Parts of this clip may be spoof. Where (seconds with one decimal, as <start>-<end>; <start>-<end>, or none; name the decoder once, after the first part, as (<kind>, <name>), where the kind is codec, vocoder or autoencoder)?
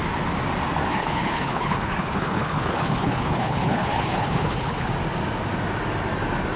0.9-4.9 (codec, HILCodec)